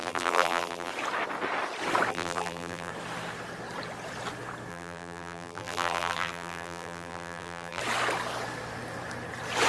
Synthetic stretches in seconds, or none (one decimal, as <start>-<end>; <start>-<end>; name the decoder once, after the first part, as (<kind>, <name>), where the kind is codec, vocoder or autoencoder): 0.0-0.9 (vocoder, BigVGAN v2); 2.1-2.9; 4.7-7.8